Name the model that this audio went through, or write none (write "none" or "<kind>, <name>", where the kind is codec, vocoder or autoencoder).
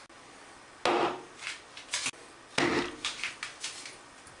none